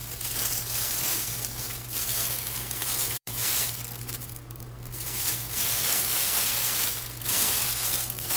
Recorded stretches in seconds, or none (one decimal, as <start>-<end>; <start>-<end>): none